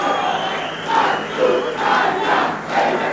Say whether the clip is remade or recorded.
recorded